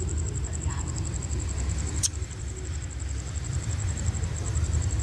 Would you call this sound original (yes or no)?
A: no